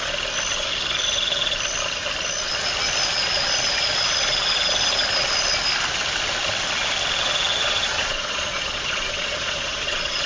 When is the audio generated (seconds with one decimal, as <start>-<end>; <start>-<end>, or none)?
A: 7.5-10.3